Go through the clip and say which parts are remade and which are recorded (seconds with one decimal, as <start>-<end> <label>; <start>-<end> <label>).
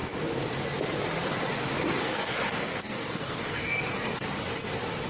0.0-2.0 recorded; 2.0-3.8 remade; 3.8-5.1 recorded